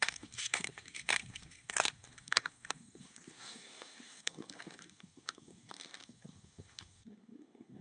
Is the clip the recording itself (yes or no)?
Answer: no